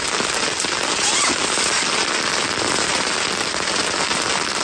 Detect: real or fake real